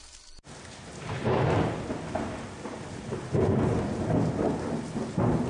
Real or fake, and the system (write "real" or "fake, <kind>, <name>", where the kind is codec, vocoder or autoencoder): real